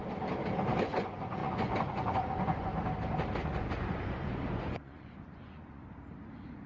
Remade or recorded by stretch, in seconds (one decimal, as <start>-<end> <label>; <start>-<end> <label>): 0.0-0.8 recorded; 0.8-2.7 remade; 2.7-3.4 recorded; 3.4-5.8 remade; 5.8-6.7 recorded